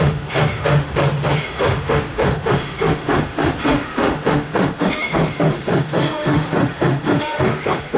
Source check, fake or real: fake